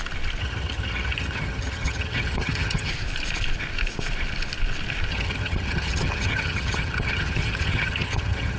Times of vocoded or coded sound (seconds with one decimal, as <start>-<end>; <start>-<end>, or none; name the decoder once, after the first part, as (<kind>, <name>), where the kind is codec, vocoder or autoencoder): 0.4-2.9 (vocoder, HiFi-GAN); 5.1-8.6